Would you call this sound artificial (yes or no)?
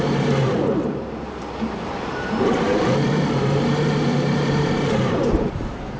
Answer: yes